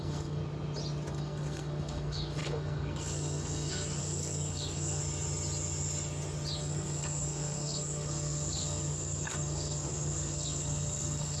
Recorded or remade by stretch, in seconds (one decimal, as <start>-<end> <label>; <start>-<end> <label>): 0.0-0.4 remade; 0.4-1.1 recorded; 1.1-5.0 remade; 5.0-6.6 recorded; 6.6-11.4 remade